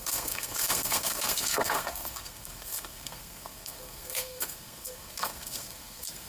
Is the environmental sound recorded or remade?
remade